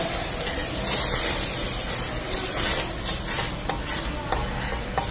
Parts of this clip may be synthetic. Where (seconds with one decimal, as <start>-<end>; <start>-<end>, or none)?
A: 0.0-5.1